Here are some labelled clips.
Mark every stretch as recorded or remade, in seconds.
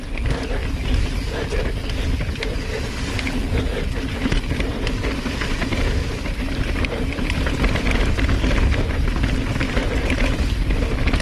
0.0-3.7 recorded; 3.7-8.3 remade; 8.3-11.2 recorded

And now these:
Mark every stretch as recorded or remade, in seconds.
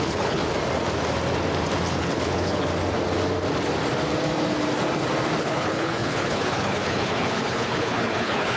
0.0-0.4 remade; 0.4-2.0 recorded; 2.0-2.7 remade; 2.7-5.4 recorded; 5.4-8.6 remade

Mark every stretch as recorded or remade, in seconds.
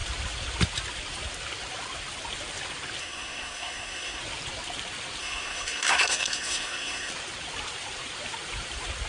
0.0-3.0 recorded; 3.0-4.2 remade; 4.2-5.2 recorded; 5.2-7.1 remade; 7.1-9.1 recorded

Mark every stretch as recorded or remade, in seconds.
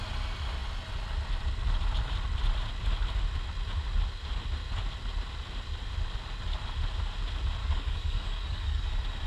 0.0-7.6 recorded; 7.6-8.9 remade; 8.9-9.3 recorded